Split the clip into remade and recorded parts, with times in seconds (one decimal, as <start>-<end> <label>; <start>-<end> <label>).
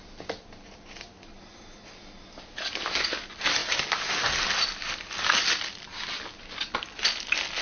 0.0-7.6 recorded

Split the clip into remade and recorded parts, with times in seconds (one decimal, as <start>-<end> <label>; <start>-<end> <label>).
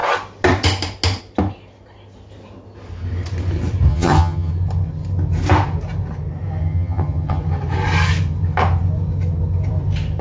0.0-3.9 recorded; 3.9-4.5 remade; 4.5-6.6 recorded; 6.6-7.4 remade; 7.4-10.2 recorded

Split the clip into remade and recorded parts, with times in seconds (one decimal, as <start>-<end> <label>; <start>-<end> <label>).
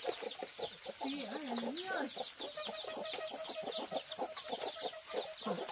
0.0-5.7 recorded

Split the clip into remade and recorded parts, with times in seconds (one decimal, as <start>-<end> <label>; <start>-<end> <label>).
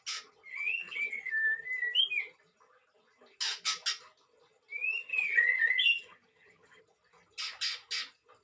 0.0-0.5 recorded; 0.5-1.3 remade; 1.3-5.1 recorded; 5.1-6.8 remade; 6.8-8.4 recorded